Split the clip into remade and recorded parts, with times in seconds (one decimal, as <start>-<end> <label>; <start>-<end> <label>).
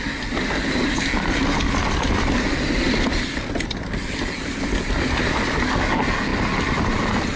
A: 0.0-7.4 recorded